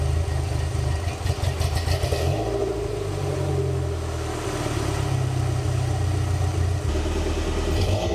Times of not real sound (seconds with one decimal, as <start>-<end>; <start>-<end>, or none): 2.6-3.5